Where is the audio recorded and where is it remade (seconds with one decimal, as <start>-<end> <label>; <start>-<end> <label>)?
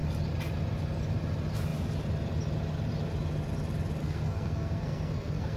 0.0-4.0 recorded; 4.0-5.6 remade